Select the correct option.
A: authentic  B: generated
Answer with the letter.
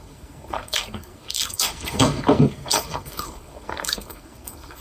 B